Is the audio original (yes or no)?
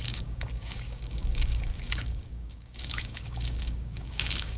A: no